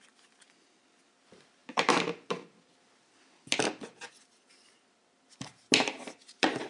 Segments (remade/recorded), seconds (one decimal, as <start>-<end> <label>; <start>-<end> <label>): 0.0-6.7 recorded